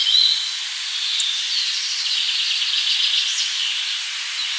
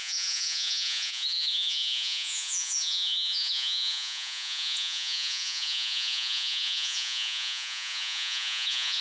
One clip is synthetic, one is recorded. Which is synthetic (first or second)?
second